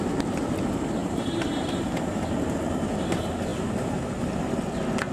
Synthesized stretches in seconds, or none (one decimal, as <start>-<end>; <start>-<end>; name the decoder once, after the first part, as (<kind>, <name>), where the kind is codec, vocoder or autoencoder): 1.0-2.6 (vocoder, BigVGAN v2)

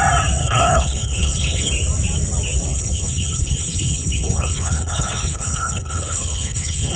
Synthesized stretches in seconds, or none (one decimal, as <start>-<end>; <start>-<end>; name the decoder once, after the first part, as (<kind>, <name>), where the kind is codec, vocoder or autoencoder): 0.4-1.7 (codec, HILCodec); 2.7-7.0

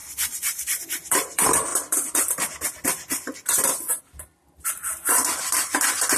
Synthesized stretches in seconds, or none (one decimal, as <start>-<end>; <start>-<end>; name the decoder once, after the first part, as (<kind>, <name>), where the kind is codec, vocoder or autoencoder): 0.0-6.2 (vocoder, BigVGAN v2)

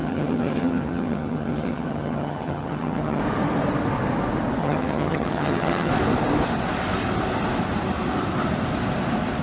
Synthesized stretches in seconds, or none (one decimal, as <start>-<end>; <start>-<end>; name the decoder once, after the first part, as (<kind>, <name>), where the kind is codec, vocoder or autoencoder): 0.0-3.2 (vocoder, HiFi-GAN); 4.6-5.9

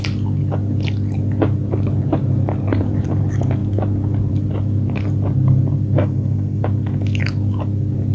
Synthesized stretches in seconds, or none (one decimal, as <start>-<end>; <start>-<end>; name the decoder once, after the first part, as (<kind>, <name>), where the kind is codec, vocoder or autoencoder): 6.0-6.6 (codec, SNAC)